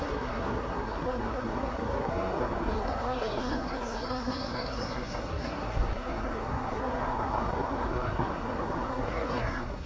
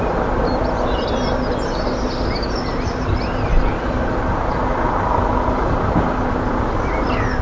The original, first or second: second